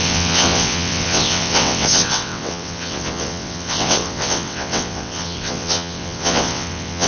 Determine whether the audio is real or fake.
fake